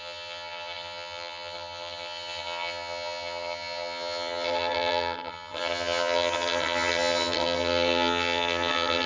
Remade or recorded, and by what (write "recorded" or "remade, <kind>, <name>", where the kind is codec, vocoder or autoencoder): remade, vocoder, HiFi-GAN